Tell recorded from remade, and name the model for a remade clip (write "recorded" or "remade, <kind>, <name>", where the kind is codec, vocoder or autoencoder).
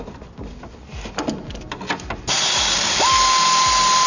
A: recorded